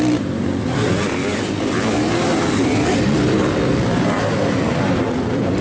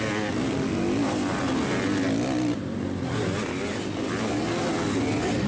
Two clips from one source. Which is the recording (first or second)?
second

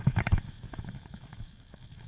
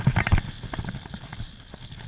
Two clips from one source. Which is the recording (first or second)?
second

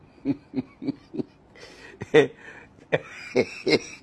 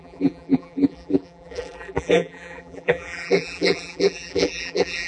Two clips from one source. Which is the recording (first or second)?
first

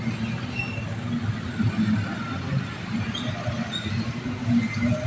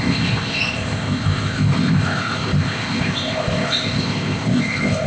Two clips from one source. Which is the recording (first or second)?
first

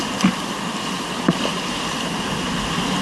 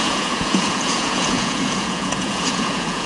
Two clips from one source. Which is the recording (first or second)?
first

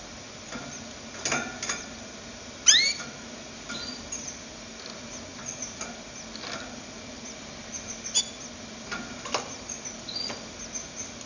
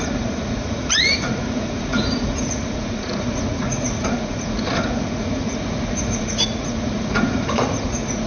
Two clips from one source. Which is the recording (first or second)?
first